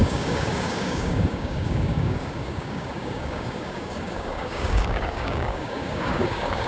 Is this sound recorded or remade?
remade